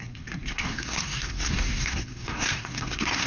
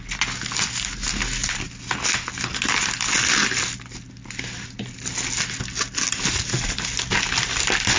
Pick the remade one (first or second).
first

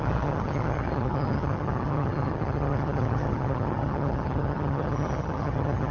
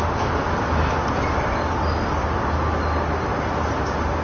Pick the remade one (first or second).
first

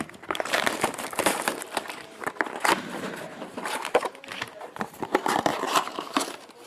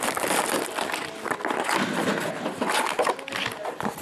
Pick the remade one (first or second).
first